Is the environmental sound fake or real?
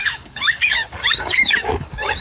fake